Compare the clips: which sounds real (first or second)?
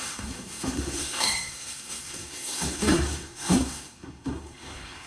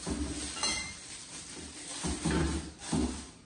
second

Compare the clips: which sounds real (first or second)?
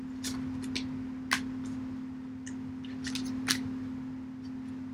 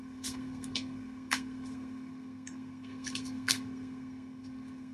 first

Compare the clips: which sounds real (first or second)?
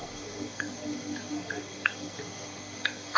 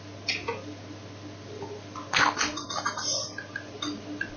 second